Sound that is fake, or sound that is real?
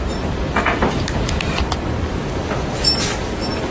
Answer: fake